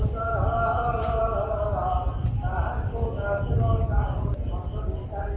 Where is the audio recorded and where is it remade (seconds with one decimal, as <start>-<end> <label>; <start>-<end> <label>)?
0.0-5.4 recorded